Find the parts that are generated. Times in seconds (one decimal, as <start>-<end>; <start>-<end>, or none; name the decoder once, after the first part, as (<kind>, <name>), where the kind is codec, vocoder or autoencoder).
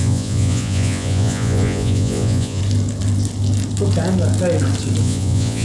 0.0-2.6 (vocoder, Vocos); 5.0-5.6